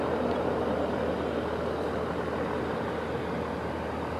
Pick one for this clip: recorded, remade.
recorded